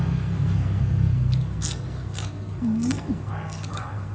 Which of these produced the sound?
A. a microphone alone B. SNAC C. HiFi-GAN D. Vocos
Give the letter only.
B